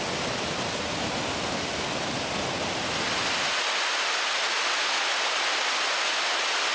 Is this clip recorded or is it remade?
recorded